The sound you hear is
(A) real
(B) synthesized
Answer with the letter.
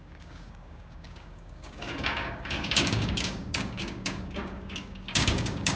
B